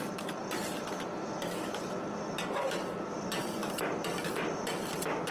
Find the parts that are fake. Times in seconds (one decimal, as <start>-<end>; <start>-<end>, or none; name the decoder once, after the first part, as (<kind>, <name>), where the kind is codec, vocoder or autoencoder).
none